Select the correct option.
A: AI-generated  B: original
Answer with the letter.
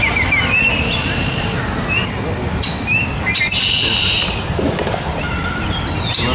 B